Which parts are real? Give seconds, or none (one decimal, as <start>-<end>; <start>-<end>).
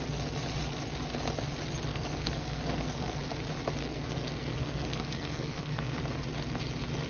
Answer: 0.0-1.9; 3.2-3.8; 6.0-7.1